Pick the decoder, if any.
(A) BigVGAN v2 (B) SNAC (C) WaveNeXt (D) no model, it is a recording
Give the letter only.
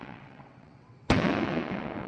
C